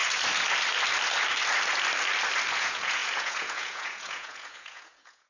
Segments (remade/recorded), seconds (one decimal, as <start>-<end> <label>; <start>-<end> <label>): 0.0-2.5 recorded; 2.5-5.3 remade